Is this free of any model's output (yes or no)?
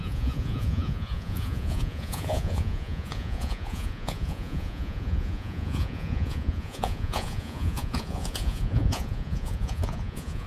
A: no